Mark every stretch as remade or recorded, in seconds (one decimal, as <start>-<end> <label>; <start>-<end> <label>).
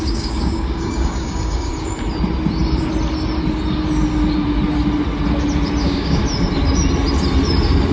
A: 0.0-1.7 remade; 1.7-5.8 recorded; 5.8-6.2 remade; 6.2-7.9 recorded